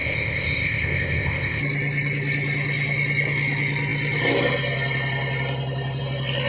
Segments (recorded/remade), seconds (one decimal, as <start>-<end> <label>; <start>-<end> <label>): 0.0-1.6 remade; 1.6-6.5 recorded